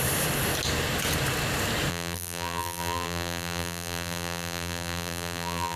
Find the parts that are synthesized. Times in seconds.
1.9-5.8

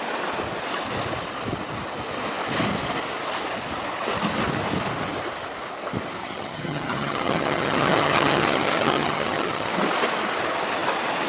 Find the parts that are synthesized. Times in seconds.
6.2-9.7

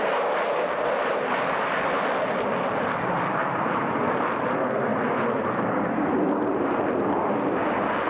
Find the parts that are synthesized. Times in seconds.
none

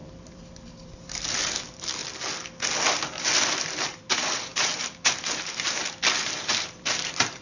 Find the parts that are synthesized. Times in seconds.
0.0-2.0; 3.6-7.4

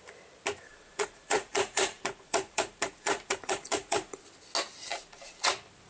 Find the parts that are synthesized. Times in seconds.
0.7-4.2; 4.9-5.5

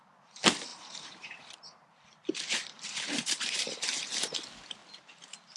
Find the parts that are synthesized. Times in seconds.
0.7-4.1

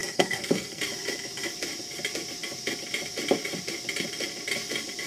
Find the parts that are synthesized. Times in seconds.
0.0-0.8